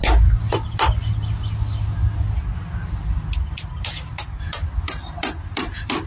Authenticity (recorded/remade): recorded